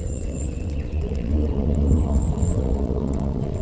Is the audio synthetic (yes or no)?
yes